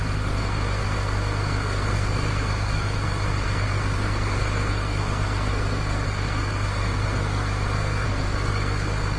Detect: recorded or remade remade